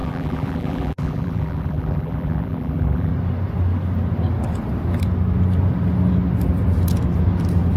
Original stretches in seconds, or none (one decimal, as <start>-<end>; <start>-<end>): 3.1-7.8